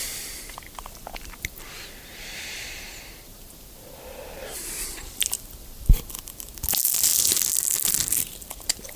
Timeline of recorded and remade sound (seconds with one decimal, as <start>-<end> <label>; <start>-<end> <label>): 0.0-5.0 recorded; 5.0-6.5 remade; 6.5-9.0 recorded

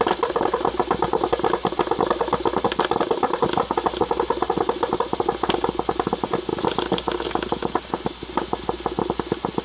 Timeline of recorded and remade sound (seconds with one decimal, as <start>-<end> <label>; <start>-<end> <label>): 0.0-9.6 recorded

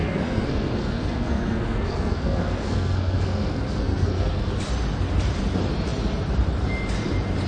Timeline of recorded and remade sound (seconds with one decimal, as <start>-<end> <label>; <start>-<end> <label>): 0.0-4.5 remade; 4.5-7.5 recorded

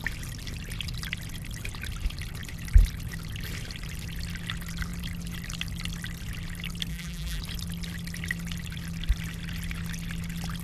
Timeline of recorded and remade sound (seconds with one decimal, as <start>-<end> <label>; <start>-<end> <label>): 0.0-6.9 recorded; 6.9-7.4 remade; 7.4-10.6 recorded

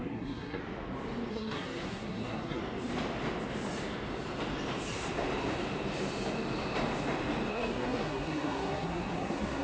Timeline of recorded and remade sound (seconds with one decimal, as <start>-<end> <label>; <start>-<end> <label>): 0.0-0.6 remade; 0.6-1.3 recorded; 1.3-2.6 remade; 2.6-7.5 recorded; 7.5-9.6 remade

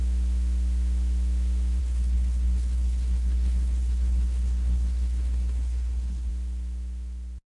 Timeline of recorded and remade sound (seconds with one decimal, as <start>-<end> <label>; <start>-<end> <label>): 0.0-1.8 recorded; 1.8-6.3 remade; 6.3-7.5 recorded

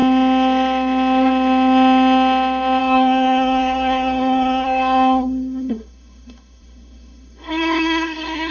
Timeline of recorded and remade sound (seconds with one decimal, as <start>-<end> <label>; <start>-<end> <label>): 0.0-2.8 recorded; 2.8-8.5 remade

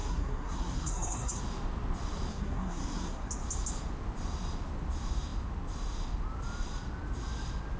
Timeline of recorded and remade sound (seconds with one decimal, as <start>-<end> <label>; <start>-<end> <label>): 0.0-1.4 remade; 1.4-2.3 recorded; 2.3-3.3 remade; 3.3-7.8 recorded